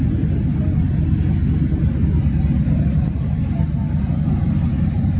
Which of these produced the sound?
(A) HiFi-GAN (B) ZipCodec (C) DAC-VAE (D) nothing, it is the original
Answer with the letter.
D